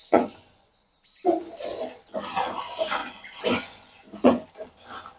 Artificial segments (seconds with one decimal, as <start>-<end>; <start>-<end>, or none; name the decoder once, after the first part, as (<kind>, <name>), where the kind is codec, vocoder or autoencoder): 0.0-0.9 (vocoder, Vocos); 3.0-4.5